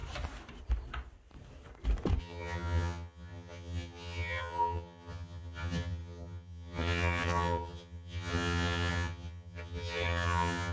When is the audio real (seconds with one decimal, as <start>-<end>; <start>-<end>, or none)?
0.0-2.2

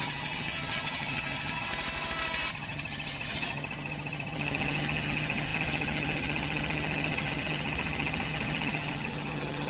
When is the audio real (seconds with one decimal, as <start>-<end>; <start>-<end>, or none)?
1.7-2.5

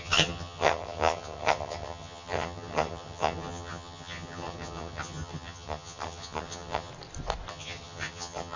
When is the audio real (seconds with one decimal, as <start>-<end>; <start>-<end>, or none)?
6.9-7.5